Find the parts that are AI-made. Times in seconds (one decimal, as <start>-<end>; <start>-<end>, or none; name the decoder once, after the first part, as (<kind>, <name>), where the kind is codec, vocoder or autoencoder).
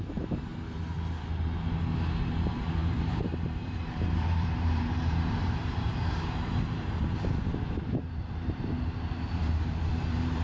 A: 0.0-0.5 (vocoder, BigVGAN v2); 2.3-10.4